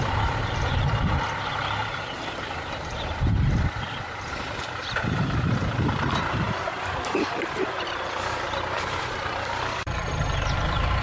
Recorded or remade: remade